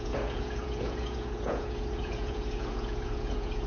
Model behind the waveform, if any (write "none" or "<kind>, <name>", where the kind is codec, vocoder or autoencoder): vocoder, Vocos